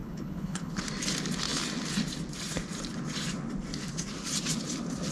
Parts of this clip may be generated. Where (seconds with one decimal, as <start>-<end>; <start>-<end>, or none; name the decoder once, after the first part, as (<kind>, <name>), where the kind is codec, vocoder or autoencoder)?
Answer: 0.0-0.8 (codec, HILCodec)